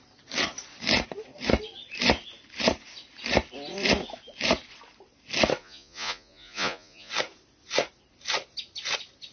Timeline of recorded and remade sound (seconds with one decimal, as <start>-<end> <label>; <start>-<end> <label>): 0.0-5.6 recorded; 5.6-7.1 remade; 7.1-9.3 recorded

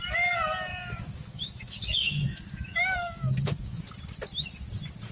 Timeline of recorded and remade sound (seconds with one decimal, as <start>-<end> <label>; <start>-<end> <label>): 0.0-0.7 recorded; 0.7-3.8 remade; 3.8-5.1 recorded

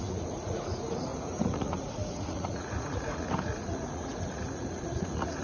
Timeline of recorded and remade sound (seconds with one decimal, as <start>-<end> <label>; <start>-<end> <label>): 0.0-5.4 remade

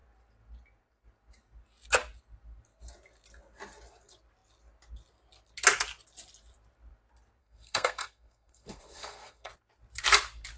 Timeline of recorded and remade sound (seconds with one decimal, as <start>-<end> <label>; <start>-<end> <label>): 0.0-7.4 recorded; 7.4-9.5 remade; 9.5-10.6 recorded

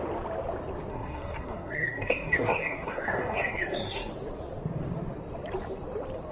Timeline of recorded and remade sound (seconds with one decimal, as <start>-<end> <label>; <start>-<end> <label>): 0.0-0.9 recorded; 0.9-4.1 remade; 4.1-6.3 recorded

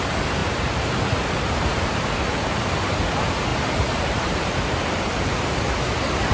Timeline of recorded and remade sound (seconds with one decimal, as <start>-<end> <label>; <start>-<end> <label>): 0.0-0.4 recorded; 0.4-2.7 remade; 2.7-3.5 recorded; 3.5-5.6 remade; 5.6-6.3 recorded

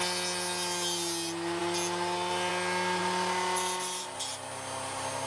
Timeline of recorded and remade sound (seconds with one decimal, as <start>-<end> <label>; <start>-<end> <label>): 0.0-5.3 recorded